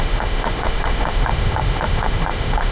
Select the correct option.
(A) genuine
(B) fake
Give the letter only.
B